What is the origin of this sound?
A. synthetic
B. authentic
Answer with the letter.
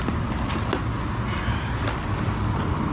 B